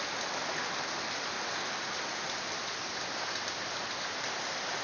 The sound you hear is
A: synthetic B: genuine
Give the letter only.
B